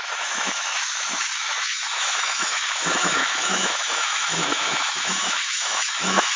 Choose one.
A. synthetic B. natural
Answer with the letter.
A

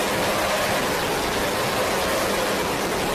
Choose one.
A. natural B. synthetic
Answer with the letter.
A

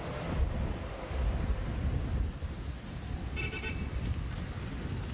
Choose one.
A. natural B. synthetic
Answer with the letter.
A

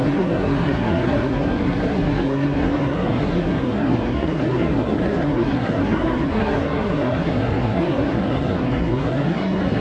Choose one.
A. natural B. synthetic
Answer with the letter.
B